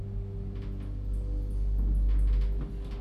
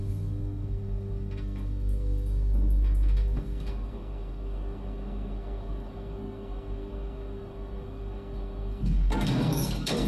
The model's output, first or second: second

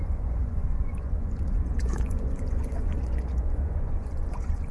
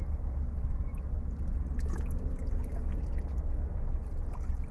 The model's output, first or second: first